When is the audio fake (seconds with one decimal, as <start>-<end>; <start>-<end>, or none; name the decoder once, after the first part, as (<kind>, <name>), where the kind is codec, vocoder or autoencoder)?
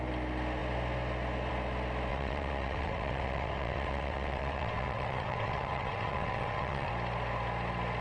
2.1-6.9 (vocoder, WaveNeXt)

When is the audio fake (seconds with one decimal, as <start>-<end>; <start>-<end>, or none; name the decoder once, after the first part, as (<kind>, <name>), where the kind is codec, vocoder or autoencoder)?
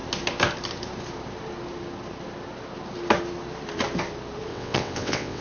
4.5-5.4 (vocoder, WaveNeXt)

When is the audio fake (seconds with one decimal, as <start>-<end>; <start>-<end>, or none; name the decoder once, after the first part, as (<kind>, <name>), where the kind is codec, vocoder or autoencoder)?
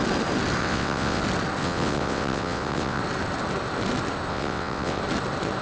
0.6-1.2 (vocoder, WaveNeXt); 1.6-3.0; 4.3-5.0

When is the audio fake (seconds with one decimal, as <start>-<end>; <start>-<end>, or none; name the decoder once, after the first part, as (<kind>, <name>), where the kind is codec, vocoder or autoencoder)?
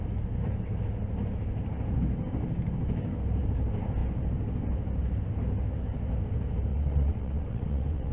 6.7-8.1 (vocoder, WaveNeXt)